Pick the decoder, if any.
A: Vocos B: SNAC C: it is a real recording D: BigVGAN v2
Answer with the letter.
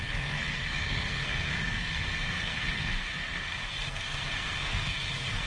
B